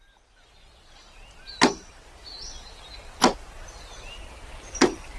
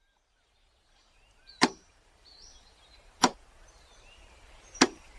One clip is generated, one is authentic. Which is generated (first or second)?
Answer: second